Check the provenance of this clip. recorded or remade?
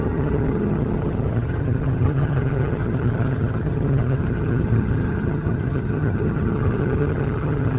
remade